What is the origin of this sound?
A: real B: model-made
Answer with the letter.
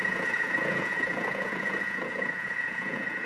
B